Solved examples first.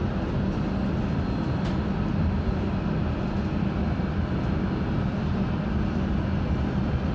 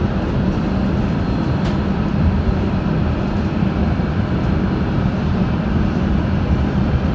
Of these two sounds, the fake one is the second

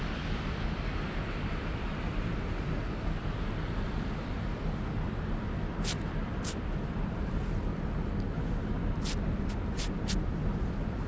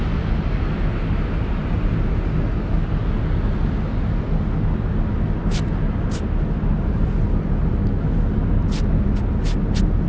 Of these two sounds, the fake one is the first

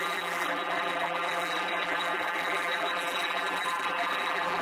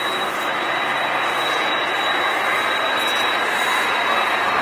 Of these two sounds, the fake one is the first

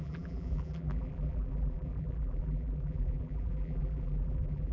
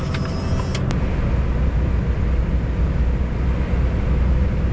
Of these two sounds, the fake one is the first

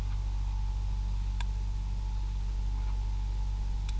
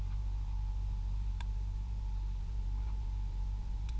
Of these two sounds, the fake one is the second